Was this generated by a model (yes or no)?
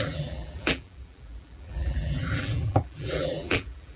yes